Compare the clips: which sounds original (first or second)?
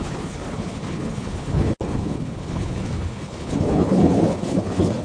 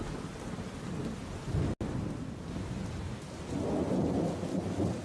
second